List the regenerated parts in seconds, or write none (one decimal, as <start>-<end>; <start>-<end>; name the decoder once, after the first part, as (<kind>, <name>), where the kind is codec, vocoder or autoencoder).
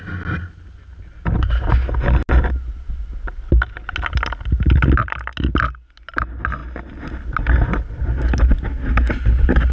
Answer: none